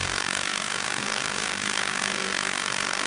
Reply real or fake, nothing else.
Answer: fake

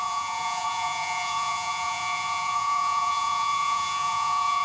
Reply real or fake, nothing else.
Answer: fake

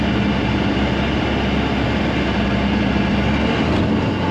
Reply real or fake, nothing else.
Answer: real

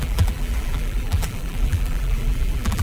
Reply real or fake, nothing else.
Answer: fake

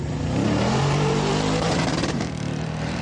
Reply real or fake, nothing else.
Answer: fake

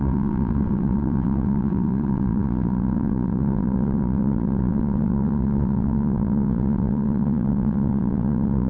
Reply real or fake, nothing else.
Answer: fake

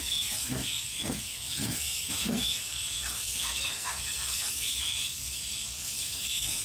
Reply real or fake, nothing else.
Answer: fake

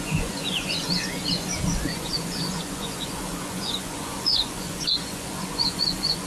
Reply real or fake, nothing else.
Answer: fake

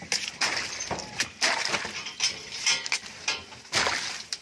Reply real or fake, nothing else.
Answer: real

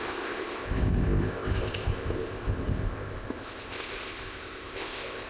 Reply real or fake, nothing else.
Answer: fake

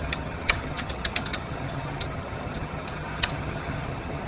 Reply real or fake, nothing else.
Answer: fake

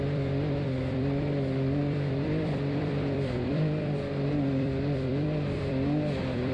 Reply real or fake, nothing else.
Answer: fake